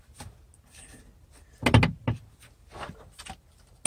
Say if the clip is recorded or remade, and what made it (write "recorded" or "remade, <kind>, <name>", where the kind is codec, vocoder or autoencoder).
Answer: recorded